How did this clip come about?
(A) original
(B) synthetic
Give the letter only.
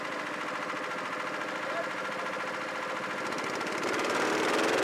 A